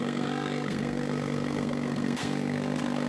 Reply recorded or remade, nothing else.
remade